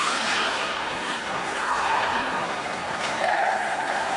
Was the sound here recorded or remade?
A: remade